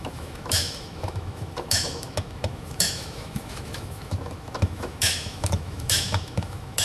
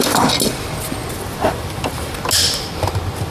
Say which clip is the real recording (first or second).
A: second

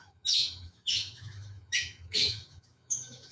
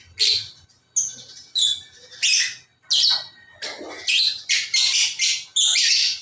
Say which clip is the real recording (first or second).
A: second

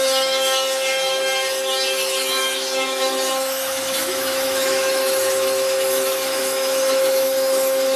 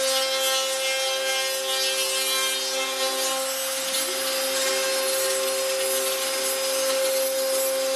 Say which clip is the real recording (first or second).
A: second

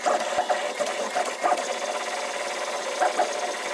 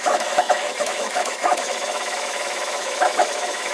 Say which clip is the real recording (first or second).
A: first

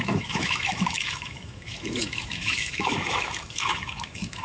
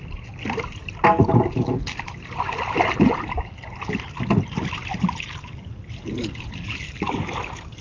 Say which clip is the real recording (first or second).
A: second